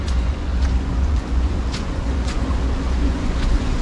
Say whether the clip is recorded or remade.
remade